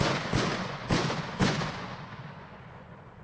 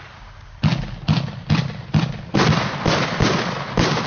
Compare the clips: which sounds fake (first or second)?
first